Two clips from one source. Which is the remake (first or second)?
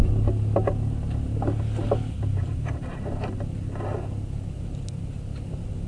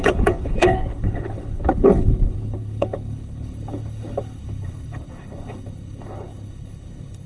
second